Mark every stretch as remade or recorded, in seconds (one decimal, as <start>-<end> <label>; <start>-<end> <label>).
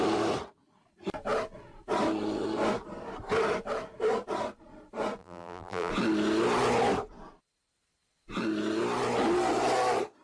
0.0-5.2 recorded; 5.2-5.9 remade; 5.9-10.2 recorded